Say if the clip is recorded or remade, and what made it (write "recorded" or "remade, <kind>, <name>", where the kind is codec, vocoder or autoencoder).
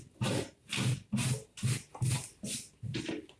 recorded